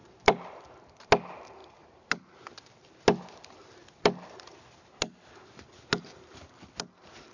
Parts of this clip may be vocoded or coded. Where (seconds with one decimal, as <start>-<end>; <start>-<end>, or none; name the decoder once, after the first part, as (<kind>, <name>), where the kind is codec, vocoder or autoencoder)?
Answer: 0.0-0.6 (vocoder, BigVGAN v2)